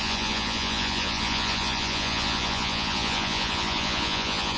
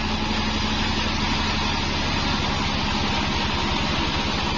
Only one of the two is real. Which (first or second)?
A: second